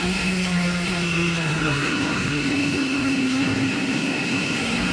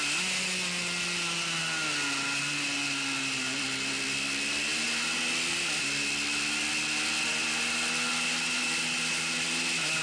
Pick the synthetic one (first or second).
first